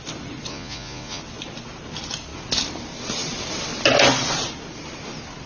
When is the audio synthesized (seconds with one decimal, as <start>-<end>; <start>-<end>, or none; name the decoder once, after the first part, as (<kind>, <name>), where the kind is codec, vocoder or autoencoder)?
0.5-1.2 (vocoder, Vocos)